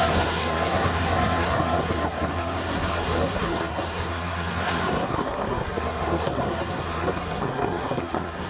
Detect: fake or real fake